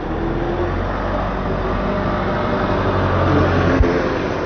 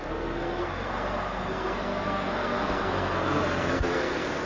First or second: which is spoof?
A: second